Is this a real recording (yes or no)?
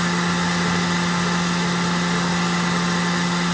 yes